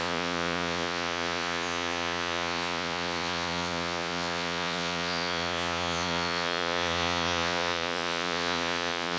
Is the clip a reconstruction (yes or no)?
yes